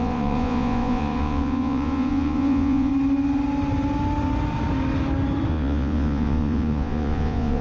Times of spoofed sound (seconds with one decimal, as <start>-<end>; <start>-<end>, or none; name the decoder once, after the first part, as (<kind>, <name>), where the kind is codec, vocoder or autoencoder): 0.0-2.9 (vocoder, Vocos); 5.5-7.6